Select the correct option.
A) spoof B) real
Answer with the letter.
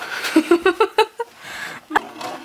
B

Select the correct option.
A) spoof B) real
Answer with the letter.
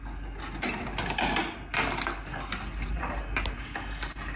B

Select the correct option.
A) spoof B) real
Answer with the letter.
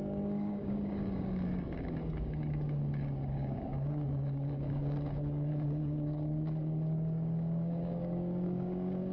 A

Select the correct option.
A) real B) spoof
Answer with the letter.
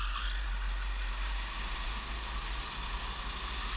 A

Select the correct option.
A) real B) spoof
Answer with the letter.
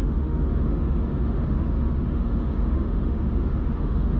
B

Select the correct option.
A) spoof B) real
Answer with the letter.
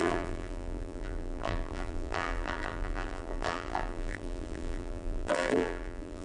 A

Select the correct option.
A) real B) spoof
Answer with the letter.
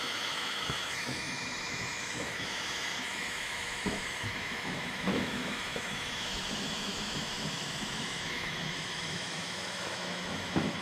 B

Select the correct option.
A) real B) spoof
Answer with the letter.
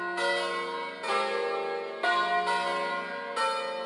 A